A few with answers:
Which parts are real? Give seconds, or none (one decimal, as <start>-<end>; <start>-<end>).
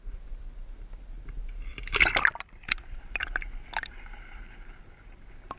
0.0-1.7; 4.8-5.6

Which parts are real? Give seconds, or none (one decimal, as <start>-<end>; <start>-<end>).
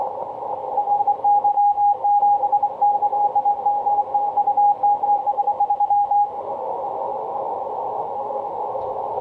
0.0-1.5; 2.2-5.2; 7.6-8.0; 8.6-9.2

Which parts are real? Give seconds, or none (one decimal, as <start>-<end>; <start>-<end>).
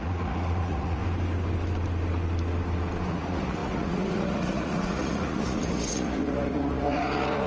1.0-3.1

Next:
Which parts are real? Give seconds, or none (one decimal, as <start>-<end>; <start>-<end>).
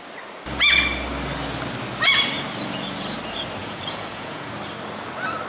0.0-3.6; 4.5-5.5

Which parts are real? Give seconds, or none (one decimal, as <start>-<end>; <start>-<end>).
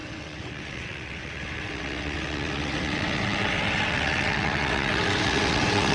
none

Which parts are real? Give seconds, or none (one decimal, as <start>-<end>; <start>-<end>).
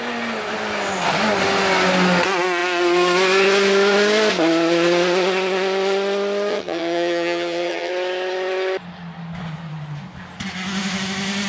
0.0-6.5; 7.9-11.5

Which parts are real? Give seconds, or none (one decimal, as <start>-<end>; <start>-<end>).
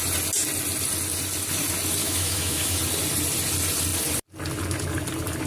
0.0-2.0; 2.8-5.5